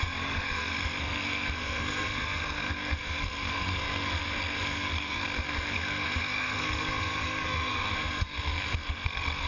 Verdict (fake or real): fake